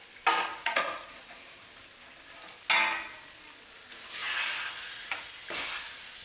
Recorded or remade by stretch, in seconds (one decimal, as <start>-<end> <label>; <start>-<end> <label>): 0.0-0.5 recorded; 0.5-1.6 remade; 1.6-4.2 recorded; 4.2-5.3 remade; 5.3-6.2 recorded